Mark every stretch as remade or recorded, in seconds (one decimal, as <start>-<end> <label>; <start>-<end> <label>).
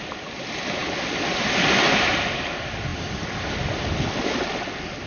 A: 0.0-5.1 recorded